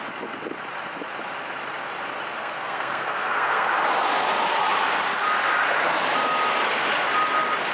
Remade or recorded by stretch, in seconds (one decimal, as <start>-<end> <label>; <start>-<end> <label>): 0.0-2.4 recorded; 2.4-3.7 remade; 3.7-7.7 recorded